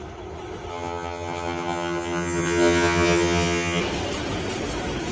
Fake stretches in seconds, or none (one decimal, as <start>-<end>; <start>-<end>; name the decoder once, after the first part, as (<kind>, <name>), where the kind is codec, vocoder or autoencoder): 0.7-3.8 (vocoder, HiFi-GAN)